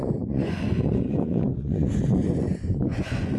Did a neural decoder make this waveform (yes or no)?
yes